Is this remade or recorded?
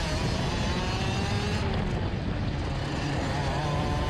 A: recorded